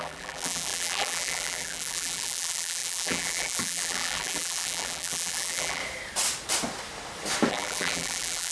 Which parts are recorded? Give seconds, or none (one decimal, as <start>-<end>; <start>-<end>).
5.8-7.5

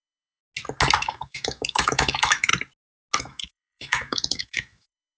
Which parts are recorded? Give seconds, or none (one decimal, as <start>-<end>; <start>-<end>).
0.4-1.0; 2.5-3.2

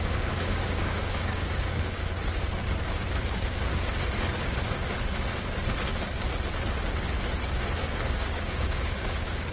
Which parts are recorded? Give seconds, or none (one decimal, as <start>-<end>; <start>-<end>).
2.0-3.1; 3.7-7.9

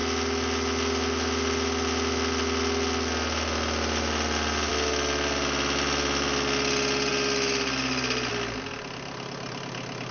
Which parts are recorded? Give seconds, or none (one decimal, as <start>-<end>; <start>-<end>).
0.0-10.1

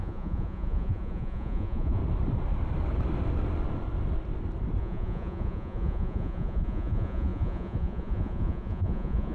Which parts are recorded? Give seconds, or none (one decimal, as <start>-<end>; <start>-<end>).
2.0-4.8

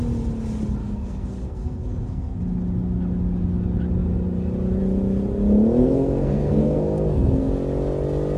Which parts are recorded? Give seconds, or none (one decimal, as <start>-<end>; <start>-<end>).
0.0-0.8; 2.4-5.8; 7.5-8.4

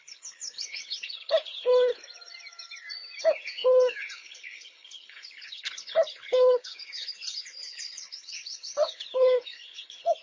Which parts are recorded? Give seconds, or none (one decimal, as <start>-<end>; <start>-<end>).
2.0-3.2